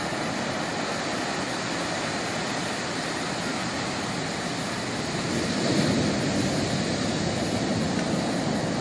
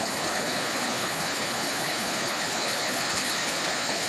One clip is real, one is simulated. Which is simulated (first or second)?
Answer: second